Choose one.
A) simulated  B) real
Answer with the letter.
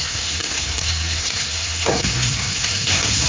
A